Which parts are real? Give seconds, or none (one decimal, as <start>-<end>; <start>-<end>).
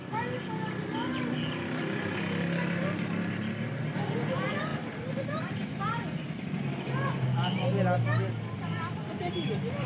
0.0-9.9